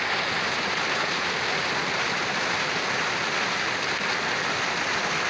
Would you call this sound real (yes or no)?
yes